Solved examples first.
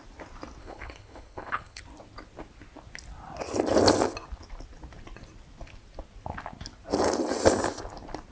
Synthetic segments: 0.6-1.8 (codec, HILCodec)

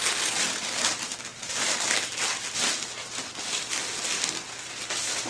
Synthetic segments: none

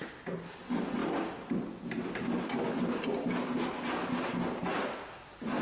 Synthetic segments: none

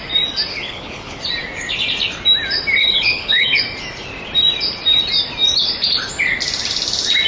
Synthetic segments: 0.5-1.2 (codec, HILCodec); 2.8-3.6

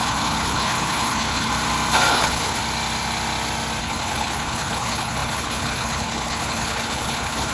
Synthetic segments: 0.0-1.5 (codec, HILCodec); 2.1-2.6; 3.8-7.5

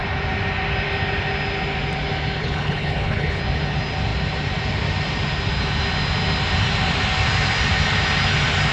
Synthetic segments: 2.4-3.4 (codec, HILCodec)

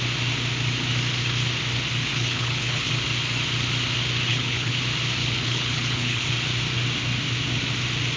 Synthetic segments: 2.1-2.9 (codec, HILCodec); 4.3-4.8; 5.2-6.3

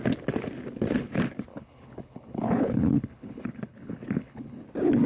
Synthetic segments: 1.5-4.6 (codec, HILCodec)